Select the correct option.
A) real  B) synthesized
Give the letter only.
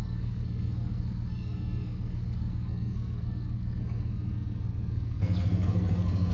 B